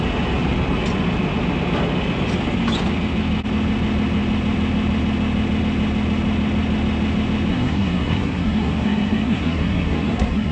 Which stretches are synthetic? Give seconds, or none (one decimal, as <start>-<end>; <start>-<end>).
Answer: 7.5-10.5